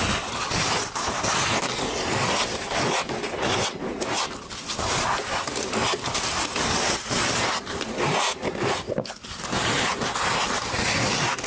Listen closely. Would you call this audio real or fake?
real